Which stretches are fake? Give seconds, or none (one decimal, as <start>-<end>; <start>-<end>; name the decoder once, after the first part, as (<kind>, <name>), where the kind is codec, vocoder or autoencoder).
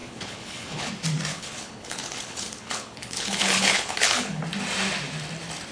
0.0-0.9 (codec, HILCodec); 1.3-4.4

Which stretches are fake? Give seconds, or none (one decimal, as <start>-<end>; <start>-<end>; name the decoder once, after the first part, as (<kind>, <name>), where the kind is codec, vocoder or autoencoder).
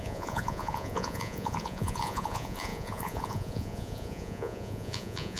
0.0-5.4 (vocoder, Vocos)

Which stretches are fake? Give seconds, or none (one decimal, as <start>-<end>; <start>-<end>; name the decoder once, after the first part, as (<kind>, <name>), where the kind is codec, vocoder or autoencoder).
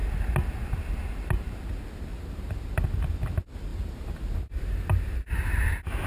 2.1-2.7 (vocoder, BigVGAN v2); 3.7-5.6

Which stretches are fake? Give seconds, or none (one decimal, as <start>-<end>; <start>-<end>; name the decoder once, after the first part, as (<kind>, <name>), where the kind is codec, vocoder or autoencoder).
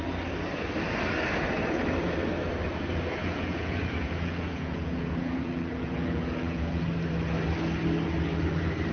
3.2-6.8 (vocoder, Vocos)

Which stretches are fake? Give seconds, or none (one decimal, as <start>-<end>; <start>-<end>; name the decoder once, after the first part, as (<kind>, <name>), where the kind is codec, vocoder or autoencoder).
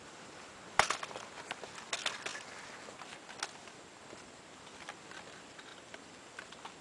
none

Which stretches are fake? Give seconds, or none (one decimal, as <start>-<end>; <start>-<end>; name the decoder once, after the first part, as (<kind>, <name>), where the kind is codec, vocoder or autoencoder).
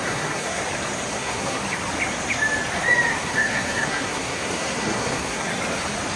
0.0-0.6 (codec, SNAC); 1.1-1.6; 3.2-5.5